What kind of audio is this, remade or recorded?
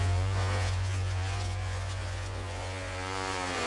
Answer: remade